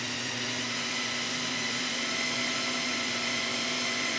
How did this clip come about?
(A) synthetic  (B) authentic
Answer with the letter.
A